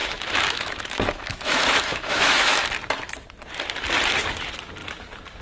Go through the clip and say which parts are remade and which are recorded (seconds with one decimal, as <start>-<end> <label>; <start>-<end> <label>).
0.0-2.6 remade; 2.6-5.4 recorded